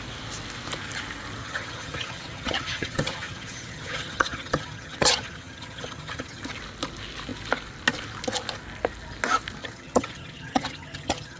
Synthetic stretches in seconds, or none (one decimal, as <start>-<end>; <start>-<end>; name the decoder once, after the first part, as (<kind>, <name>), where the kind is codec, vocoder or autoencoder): 1.4-6.4 (vocoder, HiFi-GAN); 9.6-11.4